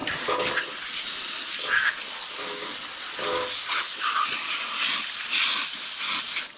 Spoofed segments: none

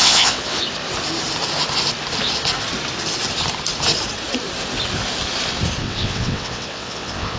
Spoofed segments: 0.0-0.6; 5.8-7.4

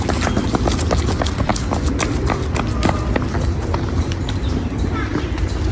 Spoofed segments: none

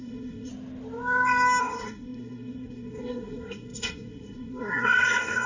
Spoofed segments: 0.0-0.5; 1.6-5.5

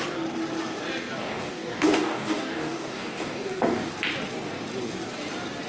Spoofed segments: 1.2-3.9